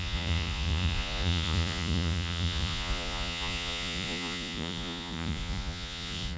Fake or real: fake